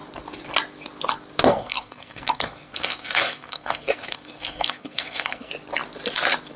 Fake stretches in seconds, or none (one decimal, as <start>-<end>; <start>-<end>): 1.5-5.5